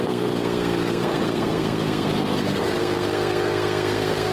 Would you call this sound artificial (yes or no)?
yes